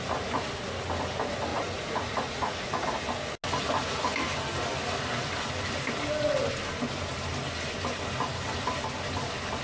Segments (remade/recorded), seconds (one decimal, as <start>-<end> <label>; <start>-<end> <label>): 0.0-1.5 recorded; 1.5-3.0 remade; 3.0-9.6 recorded